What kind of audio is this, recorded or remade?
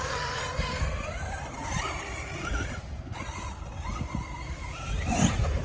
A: recorded